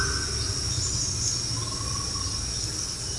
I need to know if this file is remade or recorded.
recorded